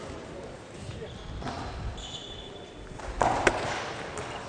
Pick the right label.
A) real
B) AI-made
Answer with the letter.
A